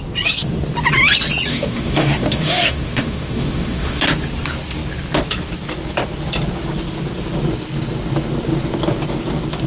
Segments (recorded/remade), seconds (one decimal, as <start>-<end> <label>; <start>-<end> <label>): 0.0-1.5 recorded; 1.5-4.0 remade; 4.0-9.7 recorded